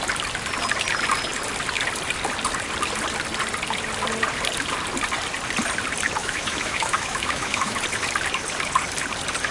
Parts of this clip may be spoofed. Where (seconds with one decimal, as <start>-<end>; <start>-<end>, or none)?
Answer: 6.2-7.8